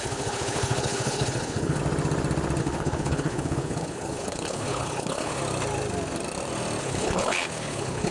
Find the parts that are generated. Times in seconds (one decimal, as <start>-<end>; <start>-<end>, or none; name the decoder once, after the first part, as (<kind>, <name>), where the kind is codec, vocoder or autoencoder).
0.0-1.8 (codec, HILCodec); 2.6-5.4; 6.8-8.1